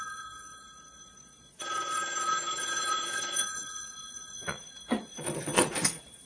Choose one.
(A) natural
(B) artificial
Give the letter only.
B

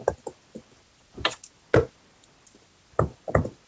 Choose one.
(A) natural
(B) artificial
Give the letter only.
A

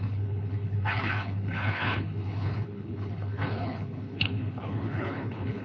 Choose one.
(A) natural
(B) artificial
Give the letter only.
B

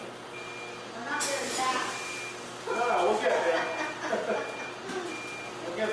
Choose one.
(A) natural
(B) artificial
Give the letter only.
A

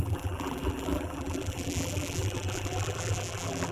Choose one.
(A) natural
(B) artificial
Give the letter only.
B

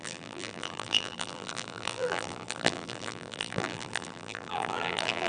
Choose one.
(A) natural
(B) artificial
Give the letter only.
B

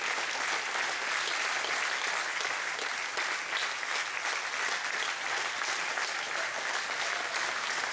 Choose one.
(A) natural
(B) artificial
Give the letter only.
A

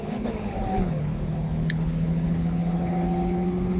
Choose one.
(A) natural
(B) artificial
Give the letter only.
B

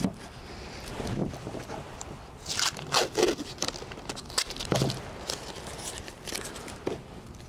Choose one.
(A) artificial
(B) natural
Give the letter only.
B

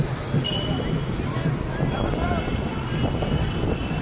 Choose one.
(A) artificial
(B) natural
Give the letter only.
B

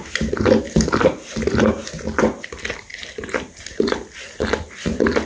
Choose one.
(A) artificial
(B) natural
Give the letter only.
B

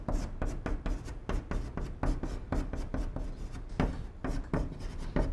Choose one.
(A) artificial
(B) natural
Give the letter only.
B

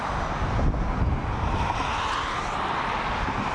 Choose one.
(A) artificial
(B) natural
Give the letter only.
B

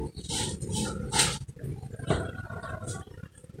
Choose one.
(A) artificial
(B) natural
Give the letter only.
B